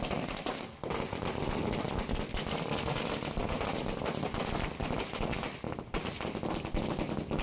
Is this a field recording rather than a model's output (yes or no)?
yes